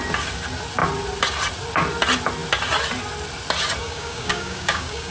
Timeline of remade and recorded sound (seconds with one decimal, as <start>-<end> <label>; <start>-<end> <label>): 0.0-3.8 recorded; 3.8-5.1 remade